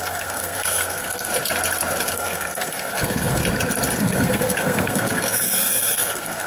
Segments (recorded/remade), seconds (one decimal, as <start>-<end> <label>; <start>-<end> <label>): 0.0-1.3 remade; 1.3-2.1 recorded; 2.1-3.4 remade; 3.4-4.0 recorded; 4.0-6.5 remade